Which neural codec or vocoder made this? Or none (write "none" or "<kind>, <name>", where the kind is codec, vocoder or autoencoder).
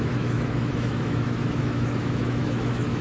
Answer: autoencoder, DAC-VAE